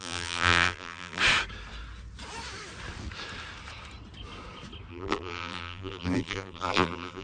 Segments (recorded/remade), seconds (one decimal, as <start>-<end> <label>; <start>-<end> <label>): 0.0-1.2 remade; 1.2-4.9 recorded; 4.9-7.2 remade